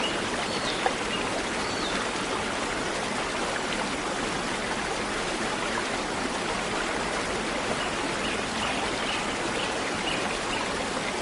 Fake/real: real